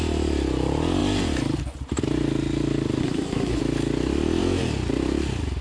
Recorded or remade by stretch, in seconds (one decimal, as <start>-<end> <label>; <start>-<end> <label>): 0.0-3.0 recorded; 3.0-3.6 remade; 3.6-5.6 recorded